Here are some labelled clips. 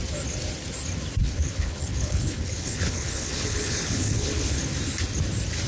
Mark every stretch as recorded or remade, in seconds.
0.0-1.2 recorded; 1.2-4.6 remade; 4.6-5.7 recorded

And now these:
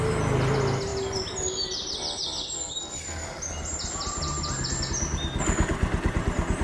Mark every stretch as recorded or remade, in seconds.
0.0-6.6 recorded

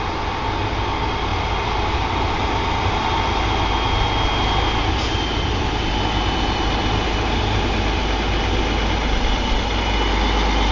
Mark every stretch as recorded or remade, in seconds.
0.0-10.7 recorded

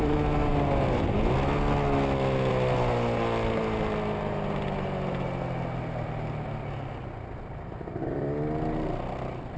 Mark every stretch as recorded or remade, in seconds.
0.0-9.6 recorded

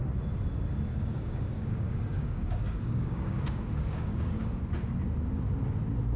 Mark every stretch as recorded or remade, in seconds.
0.0-0.9 recorded; 0.9-4.6 remade; 4.6-6.2 recorded

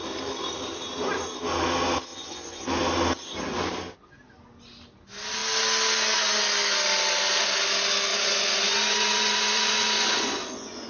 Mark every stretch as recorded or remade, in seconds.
0.0-2.1 recorded; 2.1-2.7 remade; 2.7-8.1 recorded; 8.1-10.9 remade